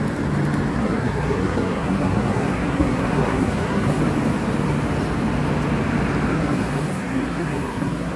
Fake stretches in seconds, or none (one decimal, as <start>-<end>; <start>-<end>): 0.7-4.0; 6.3-8.2